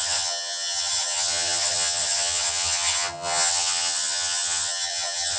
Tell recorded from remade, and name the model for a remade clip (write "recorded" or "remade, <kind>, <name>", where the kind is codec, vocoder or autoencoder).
remade, vocoder, HiFi-GAN